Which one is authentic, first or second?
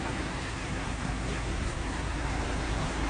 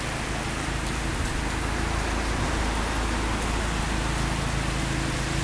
second